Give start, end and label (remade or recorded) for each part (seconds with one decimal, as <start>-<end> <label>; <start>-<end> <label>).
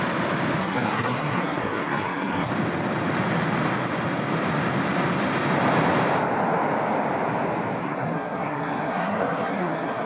0.0-0.6 recorded; 0.6-2.5 remade; 2.5-7.8 recorded; 7.8-10.1 remade